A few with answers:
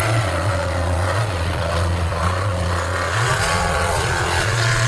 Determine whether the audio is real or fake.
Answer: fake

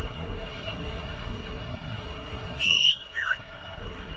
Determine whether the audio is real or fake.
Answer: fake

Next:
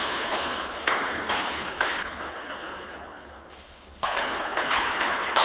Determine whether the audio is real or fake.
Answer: fake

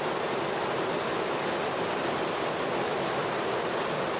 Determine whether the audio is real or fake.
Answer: real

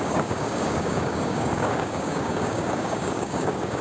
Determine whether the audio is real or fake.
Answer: fake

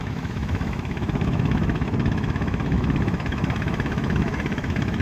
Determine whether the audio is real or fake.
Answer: fake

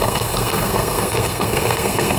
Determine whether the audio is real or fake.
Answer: fake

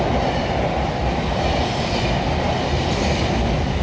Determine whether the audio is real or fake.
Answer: real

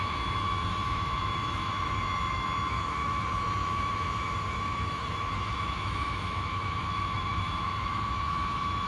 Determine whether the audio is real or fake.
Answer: fake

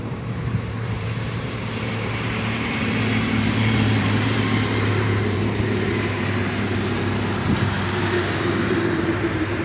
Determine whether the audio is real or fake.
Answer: fake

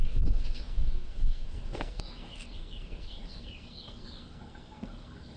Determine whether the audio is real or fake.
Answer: fake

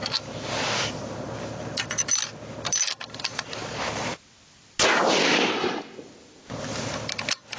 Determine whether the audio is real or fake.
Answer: real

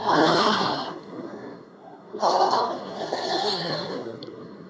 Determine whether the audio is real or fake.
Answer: fake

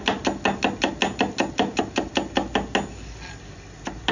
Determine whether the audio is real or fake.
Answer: real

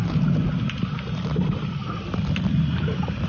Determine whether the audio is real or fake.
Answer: real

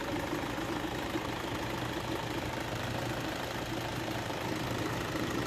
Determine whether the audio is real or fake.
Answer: fake